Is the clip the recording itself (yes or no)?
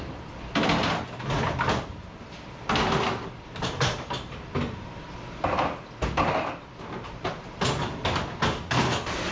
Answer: yes